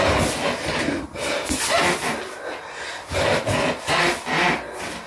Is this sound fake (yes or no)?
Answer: no